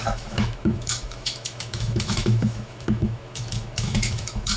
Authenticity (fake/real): fake